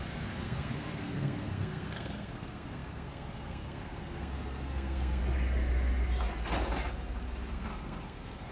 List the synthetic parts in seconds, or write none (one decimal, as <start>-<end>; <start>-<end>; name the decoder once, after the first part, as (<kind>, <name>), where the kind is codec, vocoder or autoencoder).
0.0-5.2 (codec, SNAC); 7.5-8.5